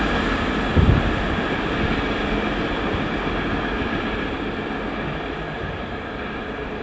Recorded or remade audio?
recorded